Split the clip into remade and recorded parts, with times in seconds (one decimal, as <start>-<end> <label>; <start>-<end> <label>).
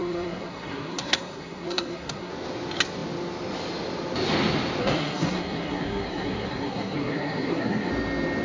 0.0-2.3 remade; 2.3-4.8 recorded; 4.8-7.9 remade; 7.9-8.4 recorded